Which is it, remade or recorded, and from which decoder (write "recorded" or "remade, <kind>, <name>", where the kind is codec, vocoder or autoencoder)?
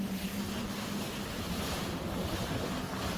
recorded